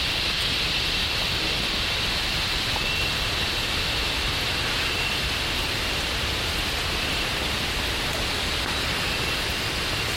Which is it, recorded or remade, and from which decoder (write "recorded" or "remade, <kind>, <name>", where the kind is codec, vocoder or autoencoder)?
recorded